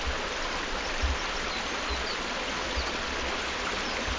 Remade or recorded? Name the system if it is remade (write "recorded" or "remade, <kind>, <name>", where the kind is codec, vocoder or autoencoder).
recorded